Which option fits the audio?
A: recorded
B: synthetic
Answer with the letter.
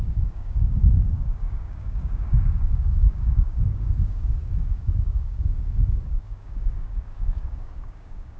B